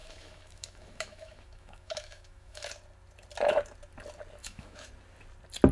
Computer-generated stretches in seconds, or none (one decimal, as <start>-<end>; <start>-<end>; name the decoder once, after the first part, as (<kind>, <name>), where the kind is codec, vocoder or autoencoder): 0.0-2.7 (autoencoder, DAC-VAE); 4.4-4.9